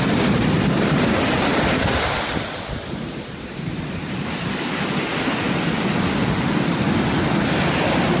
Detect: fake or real real